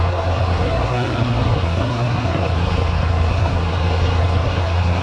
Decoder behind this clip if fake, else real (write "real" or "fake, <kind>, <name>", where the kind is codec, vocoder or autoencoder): fake, codec, SNAC